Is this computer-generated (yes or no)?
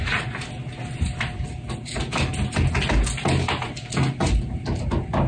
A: no